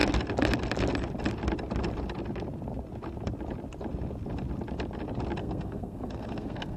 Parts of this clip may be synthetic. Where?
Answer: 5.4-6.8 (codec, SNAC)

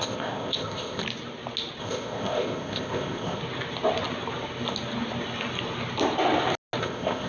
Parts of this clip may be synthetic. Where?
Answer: 0.0-1.0 (codec, ZipCodec); 1.8-3.4; 6.8-7.3

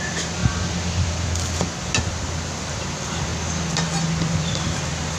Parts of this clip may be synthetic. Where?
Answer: 0.0-0.4 (vocoder, BigVGAN v2); 2.1-3.3; 4.4-5.2

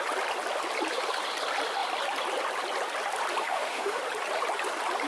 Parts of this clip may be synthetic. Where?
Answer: 3.4-4.0 (autoencoder, DAC-VAE)

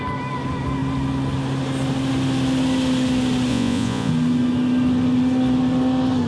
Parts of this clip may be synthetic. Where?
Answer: 3.5-4.1 (vocoder, Vocos)

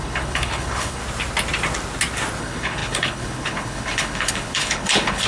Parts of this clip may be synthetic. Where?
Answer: 0.0-1.0 (codec, HILCodec); 2.4-5.3

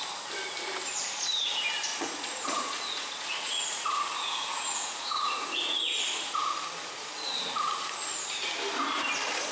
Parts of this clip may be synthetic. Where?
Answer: 1.9-6.7 (vocoder, Vocos)